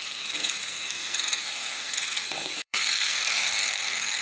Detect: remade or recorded remade